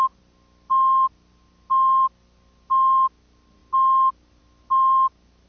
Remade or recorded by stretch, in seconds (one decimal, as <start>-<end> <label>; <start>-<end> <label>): 0.0-5.5 recorded